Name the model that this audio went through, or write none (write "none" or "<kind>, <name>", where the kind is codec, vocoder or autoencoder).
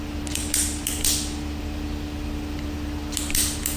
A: none